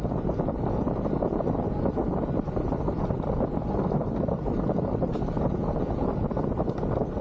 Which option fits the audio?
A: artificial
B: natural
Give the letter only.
B